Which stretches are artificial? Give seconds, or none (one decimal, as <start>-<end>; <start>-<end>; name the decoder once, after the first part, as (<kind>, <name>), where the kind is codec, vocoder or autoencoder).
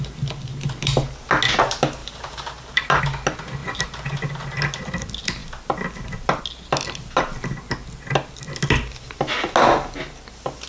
2.0-3.0 (vocoder, BigVGAN v2)